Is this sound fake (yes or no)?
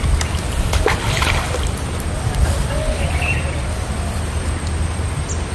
no